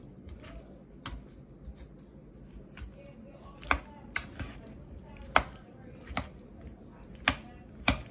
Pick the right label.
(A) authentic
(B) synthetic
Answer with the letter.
A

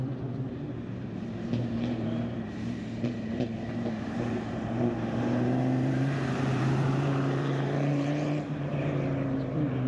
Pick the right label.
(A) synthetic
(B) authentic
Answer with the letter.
A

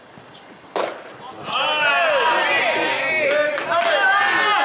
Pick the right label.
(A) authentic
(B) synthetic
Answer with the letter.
A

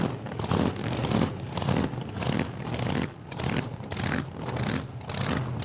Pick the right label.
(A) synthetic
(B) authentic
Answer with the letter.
B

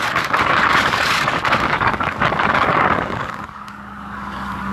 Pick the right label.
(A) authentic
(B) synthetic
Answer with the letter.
B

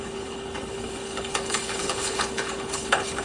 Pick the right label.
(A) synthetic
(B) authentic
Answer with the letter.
A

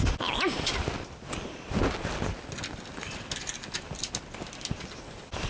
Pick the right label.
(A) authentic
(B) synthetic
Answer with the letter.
A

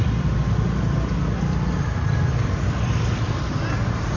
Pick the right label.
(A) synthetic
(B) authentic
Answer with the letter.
B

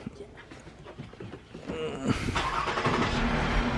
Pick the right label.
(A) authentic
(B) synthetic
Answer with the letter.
A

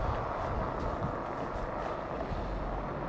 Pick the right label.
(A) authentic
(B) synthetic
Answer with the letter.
A